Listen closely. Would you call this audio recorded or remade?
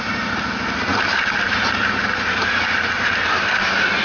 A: recorded